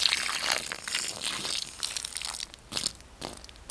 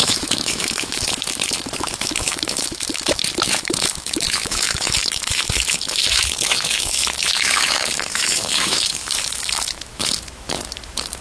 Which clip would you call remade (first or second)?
second